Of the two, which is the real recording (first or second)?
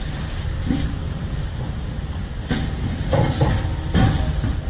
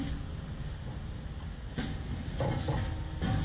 second